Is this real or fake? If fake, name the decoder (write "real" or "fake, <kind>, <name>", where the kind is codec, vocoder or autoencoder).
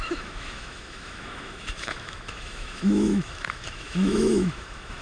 fake, autoencoder, DAC-VAE